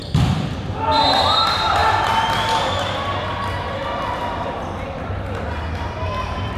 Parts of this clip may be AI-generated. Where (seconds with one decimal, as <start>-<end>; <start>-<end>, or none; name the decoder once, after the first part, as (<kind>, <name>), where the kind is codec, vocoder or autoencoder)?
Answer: 0.7-1.8 (vocoder, BigVGAN v2); 5.8-6.6